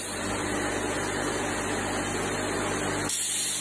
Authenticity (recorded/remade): recorded